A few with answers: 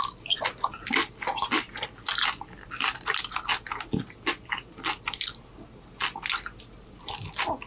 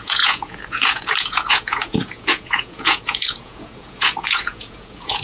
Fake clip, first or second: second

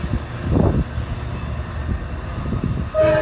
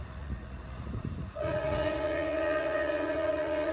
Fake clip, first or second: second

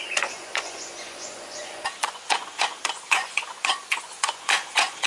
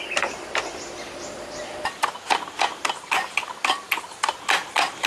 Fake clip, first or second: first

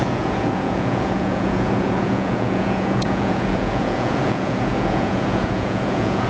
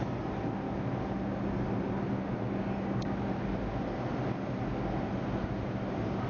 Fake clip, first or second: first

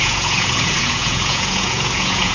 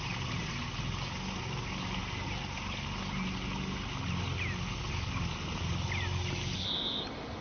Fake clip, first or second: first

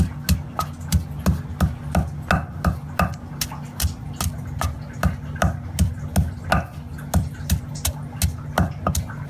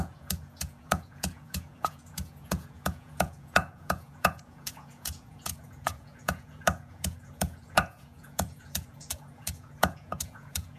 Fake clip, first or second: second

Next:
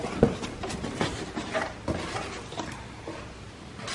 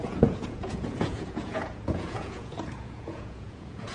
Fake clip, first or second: second